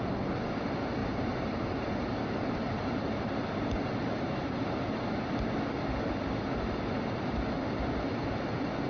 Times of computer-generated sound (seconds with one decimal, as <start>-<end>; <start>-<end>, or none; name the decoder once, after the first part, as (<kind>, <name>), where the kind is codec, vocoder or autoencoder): 1.0-4.4 (vocoder, BigVGAN v2)